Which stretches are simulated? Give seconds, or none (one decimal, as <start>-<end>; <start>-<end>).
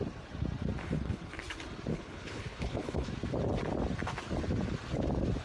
0.8-1.4; 1.9-3.1